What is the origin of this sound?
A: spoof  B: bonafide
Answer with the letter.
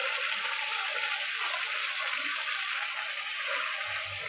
B